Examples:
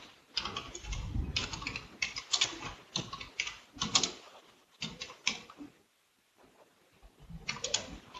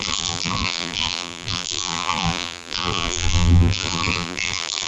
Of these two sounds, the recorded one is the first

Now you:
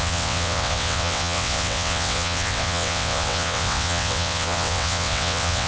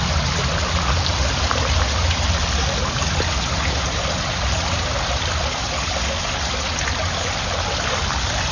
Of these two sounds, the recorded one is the second